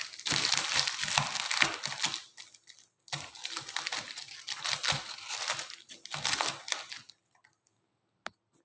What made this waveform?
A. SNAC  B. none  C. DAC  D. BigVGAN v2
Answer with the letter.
B